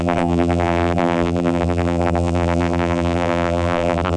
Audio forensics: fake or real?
fake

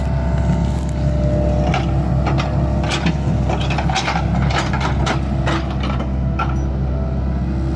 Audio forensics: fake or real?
real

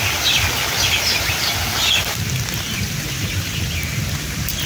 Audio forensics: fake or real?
real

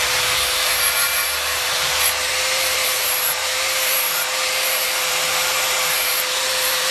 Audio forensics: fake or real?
fake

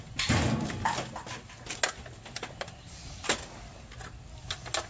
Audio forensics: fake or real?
real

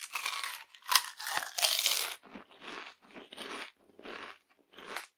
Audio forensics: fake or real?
real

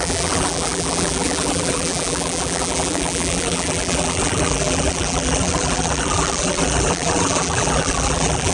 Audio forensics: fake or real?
fake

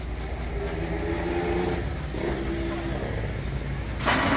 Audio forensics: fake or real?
real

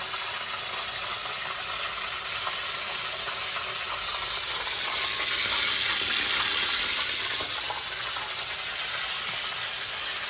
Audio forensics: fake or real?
real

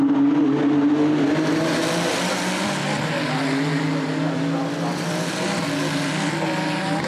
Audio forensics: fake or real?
real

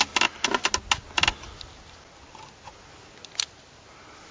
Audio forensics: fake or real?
real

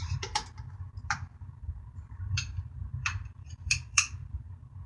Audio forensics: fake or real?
fake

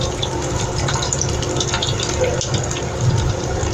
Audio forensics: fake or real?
real